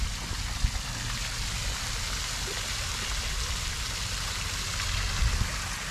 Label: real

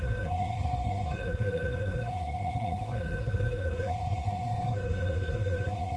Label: fake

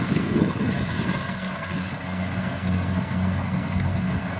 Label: fake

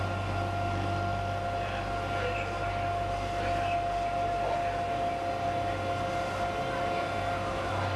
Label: real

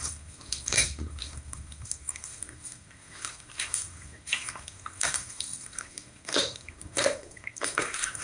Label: fake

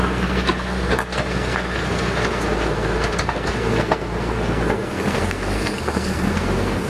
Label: fake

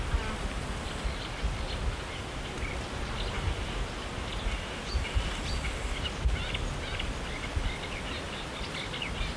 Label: real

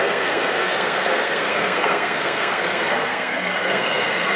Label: fake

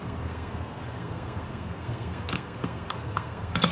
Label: fake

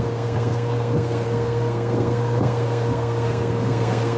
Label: fake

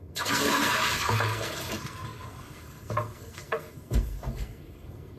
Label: fake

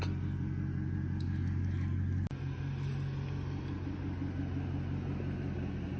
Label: real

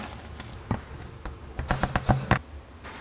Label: real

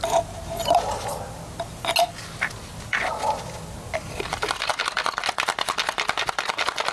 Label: real